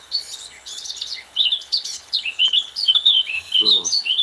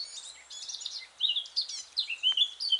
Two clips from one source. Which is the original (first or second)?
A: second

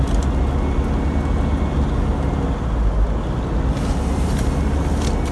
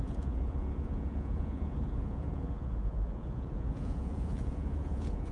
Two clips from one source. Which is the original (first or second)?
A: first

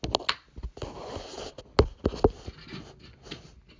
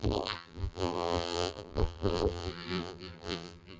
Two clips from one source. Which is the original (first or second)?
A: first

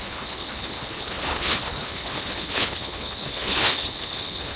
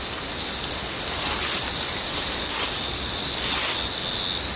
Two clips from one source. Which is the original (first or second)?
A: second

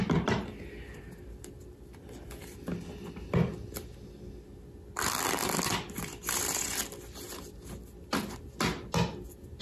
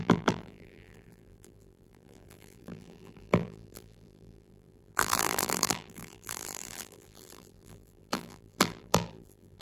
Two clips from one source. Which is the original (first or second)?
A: first